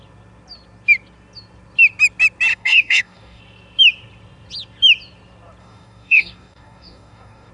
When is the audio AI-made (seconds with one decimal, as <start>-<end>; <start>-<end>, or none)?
2.5-3.4; 5.6-7.5